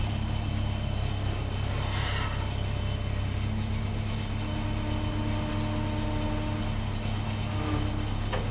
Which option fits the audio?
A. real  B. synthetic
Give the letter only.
A